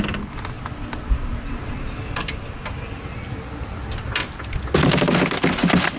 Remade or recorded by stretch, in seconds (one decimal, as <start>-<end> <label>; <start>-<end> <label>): 0.0-6.0 recorded